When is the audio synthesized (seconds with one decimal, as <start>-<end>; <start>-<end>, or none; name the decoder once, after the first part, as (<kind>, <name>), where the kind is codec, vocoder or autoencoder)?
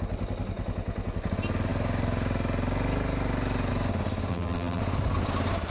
4.3-4.8 (vocoder, BigVGAN v2)